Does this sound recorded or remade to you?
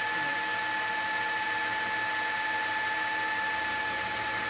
recorded